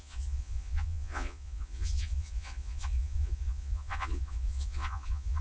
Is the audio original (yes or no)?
no